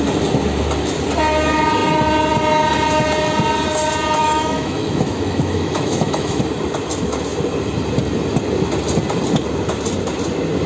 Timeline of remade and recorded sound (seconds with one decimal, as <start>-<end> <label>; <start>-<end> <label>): 0.0-4.2 recorded; 4.2-6.4 remade; 6.4-10.7 recorded